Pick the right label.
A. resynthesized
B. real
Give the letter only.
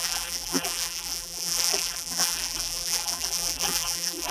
A